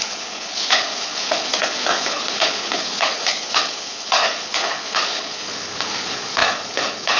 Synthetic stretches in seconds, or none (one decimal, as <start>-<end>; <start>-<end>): 0.0-7.2